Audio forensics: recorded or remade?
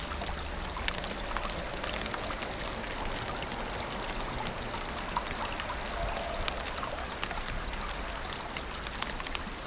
recorded